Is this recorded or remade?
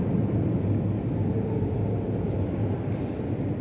recorded